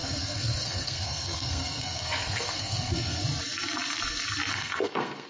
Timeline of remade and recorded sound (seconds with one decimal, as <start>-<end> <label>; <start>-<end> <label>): 0.0-3.2 remade; 3.2-4.5 recorded; 4.5-5.3 remade